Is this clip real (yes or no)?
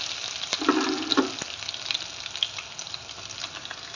yes